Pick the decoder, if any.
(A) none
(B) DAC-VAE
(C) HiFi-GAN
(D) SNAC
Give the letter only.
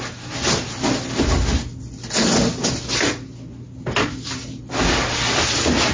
A